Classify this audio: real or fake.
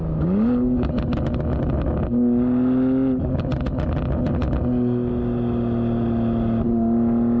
real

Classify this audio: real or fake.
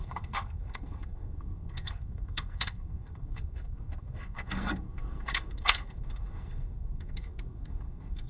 fake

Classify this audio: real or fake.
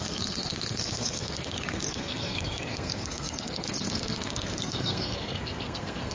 fake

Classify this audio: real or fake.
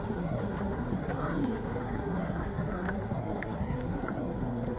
fake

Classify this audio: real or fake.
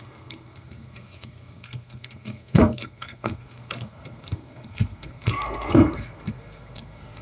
fake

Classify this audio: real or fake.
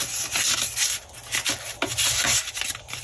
real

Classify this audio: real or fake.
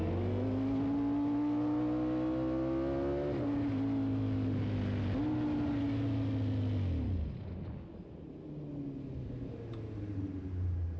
real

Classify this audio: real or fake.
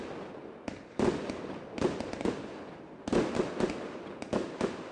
real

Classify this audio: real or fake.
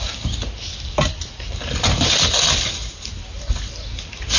real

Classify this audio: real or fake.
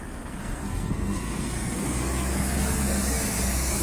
fake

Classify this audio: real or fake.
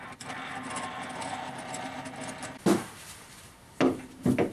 real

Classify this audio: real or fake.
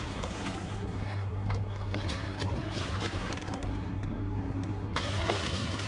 fake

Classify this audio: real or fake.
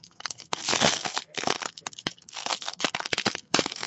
fake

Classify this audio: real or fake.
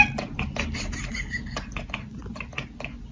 real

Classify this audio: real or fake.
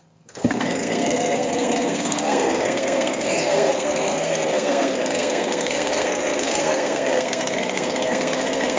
fake